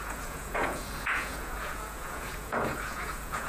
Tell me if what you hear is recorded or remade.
remade